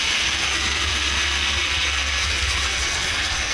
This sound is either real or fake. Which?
fake